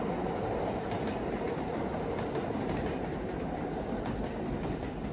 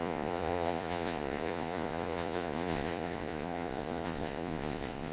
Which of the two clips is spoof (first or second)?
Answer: second